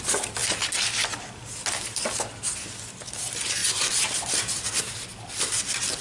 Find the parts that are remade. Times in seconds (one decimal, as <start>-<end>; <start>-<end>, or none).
3.6-4.8